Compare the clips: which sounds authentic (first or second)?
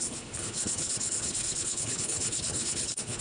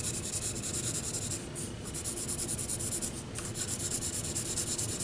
second